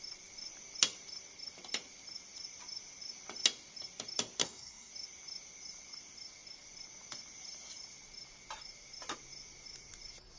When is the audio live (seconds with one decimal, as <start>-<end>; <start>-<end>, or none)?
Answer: 0.0-4.4; 4.9-10.4